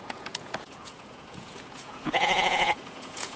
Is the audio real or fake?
fake